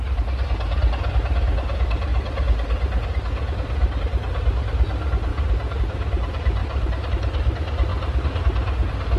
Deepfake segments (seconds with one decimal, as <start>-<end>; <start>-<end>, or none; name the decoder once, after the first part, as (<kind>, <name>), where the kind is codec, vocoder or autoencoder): 5.3-5.8 (vocoder, BigVGAN v2); 6.6-7.1; 7.9-8.4